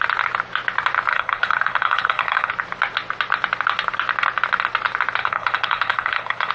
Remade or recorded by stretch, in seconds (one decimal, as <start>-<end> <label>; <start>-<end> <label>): 0.0-1.1 recorded; 1.1-2.5 remade; 2.5-5.2 recorded; 5.2-6.5 remade